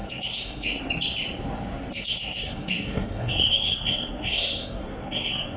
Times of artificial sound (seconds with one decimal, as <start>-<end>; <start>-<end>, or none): 0.0-0.8; 1.9-5.6